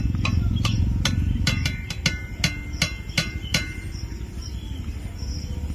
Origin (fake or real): real